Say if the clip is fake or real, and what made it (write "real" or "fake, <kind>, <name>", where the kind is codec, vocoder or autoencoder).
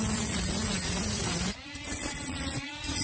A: fake, vocoder, Vocos